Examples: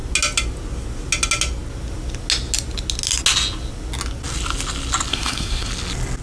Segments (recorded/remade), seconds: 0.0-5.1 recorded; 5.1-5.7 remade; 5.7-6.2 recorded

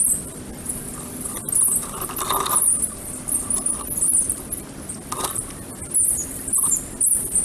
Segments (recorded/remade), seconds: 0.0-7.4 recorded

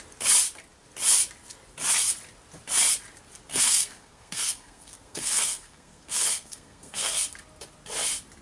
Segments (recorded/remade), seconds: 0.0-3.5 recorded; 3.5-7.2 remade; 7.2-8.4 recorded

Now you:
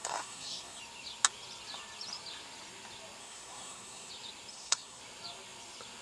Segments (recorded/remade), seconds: 0.0-0.8 remade; 0.8-3.2 recorded; 3.2-4.1 remade; 4.1-4.5 recorded; 4.5-5.0 remade; 5.0-6.0 recorded

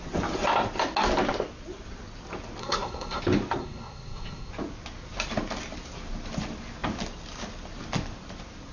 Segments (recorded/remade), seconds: 0.0-2.6 recorded; 2.6-3.2 remade; 3.2-3.6 recorded; 3.6-4.5 remade; 4.5-8.7 recorded